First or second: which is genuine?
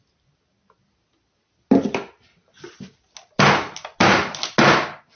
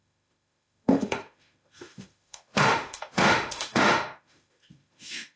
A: first